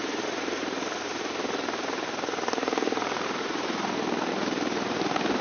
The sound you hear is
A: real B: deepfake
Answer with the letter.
B